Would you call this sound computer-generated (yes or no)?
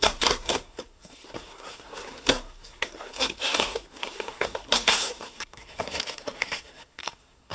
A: yes